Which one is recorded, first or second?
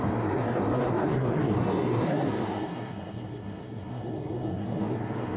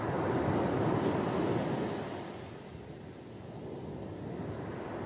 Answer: second